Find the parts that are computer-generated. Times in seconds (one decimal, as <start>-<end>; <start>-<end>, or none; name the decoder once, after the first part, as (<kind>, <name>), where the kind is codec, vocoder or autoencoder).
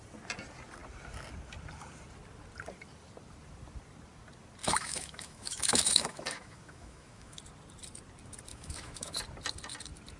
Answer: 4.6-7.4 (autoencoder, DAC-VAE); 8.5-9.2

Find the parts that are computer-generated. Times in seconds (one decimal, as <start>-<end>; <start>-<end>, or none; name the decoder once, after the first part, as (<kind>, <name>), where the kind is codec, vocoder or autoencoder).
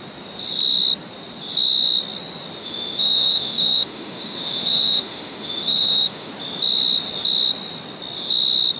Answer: 2.6-6.3 (autoencoder, DAC-VAE)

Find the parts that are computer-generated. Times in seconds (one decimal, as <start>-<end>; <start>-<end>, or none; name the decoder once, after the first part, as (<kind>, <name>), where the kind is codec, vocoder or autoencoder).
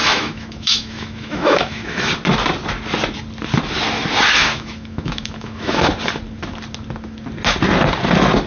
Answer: 0.0-2.1 (autoencoder, DAC-VAE); 4.4-5.9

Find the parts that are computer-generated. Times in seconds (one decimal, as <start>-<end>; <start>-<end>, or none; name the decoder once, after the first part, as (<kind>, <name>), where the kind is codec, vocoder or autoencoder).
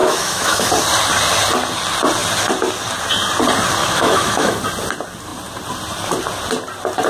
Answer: 0.0-0.7 (autoencoder, DAC-VAE); 3.8-4.6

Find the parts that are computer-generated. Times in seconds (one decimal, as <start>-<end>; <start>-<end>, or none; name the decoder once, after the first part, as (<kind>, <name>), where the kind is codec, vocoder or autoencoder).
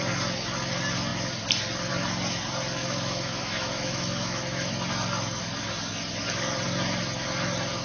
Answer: 2.8-4.7 (autoencoder, DAC-VAE)